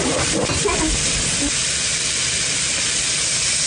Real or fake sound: real